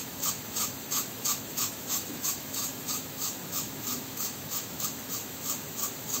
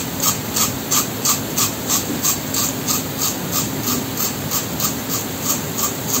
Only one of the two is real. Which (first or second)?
second